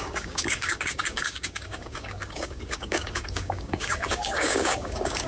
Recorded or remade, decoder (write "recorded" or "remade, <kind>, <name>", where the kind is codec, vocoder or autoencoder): remade, codec, DAC